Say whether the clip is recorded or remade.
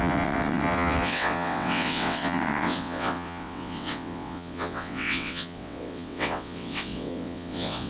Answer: remade